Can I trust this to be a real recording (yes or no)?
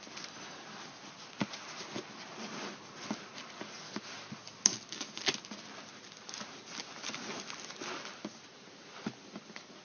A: yes